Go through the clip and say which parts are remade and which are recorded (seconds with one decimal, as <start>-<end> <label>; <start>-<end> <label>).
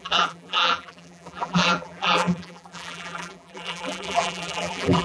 0.0-5.0 remade